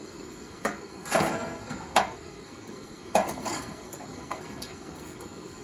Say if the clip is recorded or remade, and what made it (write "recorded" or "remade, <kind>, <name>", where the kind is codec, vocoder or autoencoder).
remade, codec, SNAC